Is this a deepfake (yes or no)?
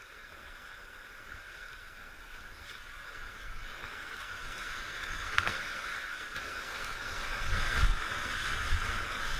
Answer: yes